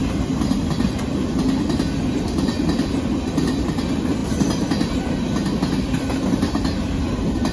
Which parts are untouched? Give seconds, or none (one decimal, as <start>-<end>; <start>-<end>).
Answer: 0.0-7.5